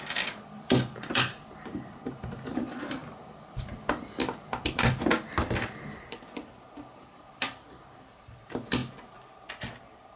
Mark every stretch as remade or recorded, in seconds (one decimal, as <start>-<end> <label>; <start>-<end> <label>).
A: 0.0-8.8 remade; 8.8-10.2 recorded